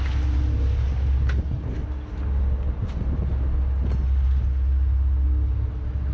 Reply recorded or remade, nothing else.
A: recorded